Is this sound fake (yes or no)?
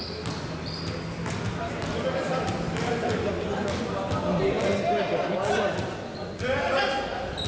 no